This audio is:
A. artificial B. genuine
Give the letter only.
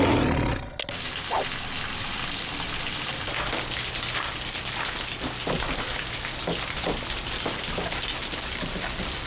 B